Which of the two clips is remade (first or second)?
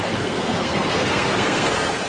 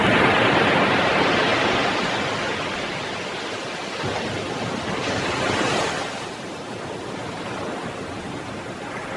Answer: first